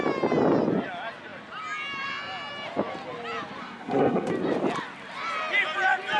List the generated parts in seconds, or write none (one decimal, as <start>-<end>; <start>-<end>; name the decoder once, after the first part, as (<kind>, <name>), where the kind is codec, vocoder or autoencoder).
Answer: 3.6-4.3 (codec, SNAC)